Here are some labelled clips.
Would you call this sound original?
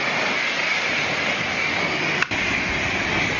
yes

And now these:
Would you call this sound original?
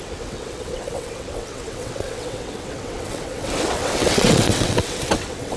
no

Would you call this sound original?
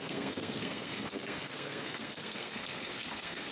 no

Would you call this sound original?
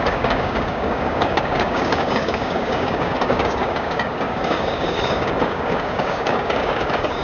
no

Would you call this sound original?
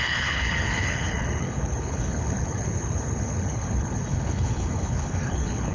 no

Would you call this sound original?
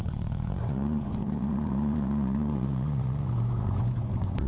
no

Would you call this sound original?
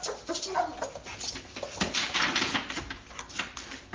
yes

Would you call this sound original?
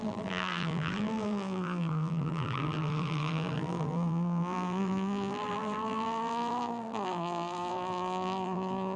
no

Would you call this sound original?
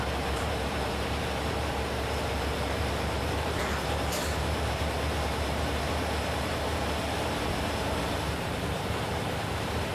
no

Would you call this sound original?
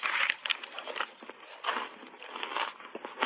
yes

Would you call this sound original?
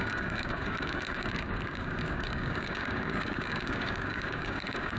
no